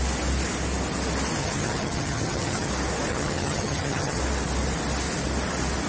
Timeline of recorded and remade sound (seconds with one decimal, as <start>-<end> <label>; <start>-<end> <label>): 0.0-1.4 recorded; 1.4-2.7 remade; 2.7-3.1 recorded; 3.1-4.2 remade; 4.2-5.9 recorded